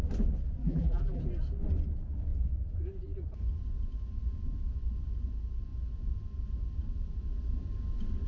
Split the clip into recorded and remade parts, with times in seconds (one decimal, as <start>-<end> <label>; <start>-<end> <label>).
0.0-0.6 recorded; 0.6-1.2 remade; 1.2-8.3 recorded

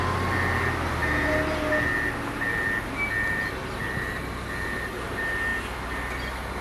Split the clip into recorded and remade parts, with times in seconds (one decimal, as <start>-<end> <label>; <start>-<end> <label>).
0.0-6.6 recorded